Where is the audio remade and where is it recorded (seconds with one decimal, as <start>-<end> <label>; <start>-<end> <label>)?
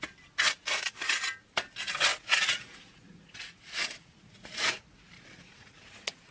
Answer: 0.0-2.1 recorded; 2.1-6.3 remade